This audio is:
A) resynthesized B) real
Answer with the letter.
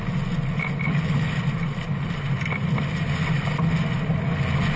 B